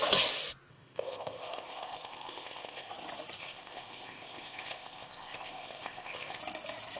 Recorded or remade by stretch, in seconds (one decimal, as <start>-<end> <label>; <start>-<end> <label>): 0.0-0.7 recorded; 0.7-2.9 remade; 2.9-3.4 recorded; 3.4-6.4 remade; 6.4-7.0 recorded

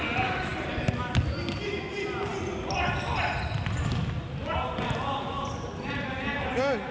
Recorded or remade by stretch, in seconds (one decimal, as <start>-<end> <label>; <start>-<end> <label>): 0.0-6.9 recorded

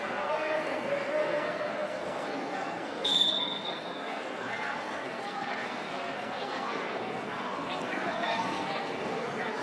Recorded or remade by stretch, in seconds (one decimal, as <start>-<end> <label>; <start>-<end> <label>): 0.0-9.6 remade

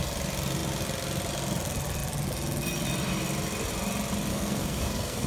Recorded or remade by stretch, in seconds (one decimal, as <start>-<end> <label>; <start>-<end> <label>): 0.0-4.3 recorded; 4.3-5.3 remade

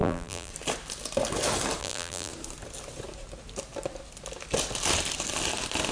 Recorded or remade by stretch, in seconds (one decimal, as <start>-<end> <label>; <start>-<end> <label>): 0.0-0.5 remade; 0.5-1.8 recorded; 1.8-2.3 remade; 2.3-5.9 recorded

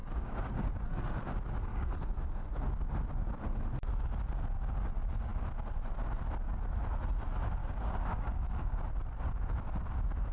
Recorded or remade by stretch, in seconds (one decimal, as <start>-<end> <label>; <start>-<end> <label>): 0.0-0.7 remade; 0.7-1.7 recorded; 1.7-2.6 remade; 2.6-7.6 recorded; 7.6-8.8 remade; 8.8-10.3 recorded